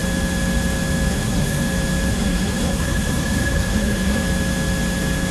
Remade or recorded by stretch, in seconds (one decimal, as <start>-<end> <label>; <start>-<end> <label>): 0.0-1.1 recorded; 1.1-1.6 remade; 1.6-2.1 recorded; 2.1-4.2 remade; 4.2-5.3 recorded